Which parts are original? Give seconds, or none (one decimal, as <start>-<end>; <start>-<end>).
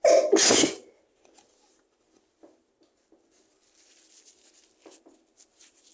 0.0-5.9